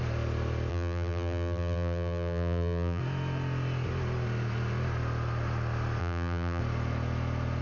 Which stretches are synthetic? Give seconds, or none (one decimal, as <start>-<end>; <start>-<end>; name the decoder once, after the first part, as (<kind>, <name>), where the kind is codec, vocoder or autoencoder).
0.7-3.0 (vocoder, BigVGAN v2); 6.0-6.6